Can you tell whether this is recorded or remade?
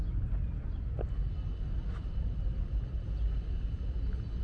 recorded